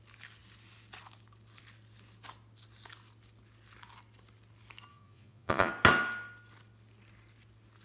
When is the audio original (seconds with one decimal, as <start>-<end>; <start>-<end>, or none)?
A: 0.0-4.9; 5.7-7.8